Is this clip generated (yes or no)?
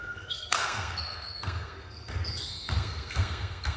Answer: yes